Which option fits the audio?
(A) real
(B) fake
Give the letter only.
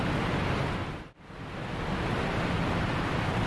A